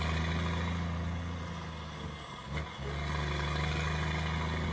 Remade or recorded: recorded